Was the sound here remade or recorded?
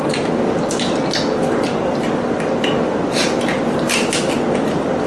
recorded